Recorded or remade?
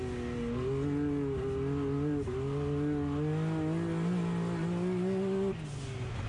recorded